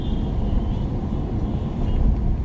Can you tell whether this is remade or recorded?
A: remade